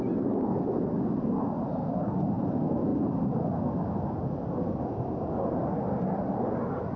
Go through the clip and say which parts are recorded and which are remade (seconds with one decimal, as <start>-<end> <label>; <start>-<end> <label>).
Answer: 0.0-7.0 recorded